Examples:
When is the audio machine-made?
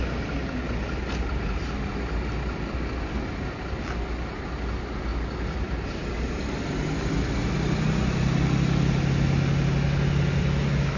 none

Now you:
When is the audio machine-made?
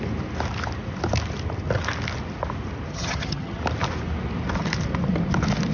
2.9-3.6 (vocoder, HiFi-GAN)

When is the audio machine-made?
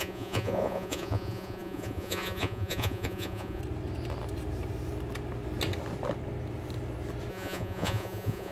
0.0-3.6 (vocoder, Vocos); 7.3-8.5